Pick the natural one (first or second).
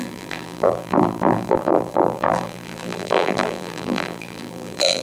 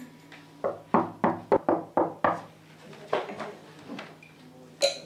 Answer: second